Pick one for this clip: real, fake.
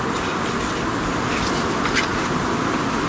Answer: real